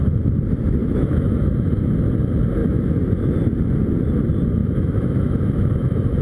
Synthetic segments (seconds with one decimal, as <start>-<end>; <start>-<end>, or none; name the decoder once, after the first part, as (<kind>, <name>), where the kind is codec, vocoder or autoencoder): 0.8-2.0 (autoencoder, DAC-VAE); 2.6-3.3; 4.6-6.2